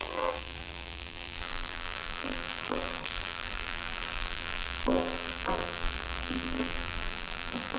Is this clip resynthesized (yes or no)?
yes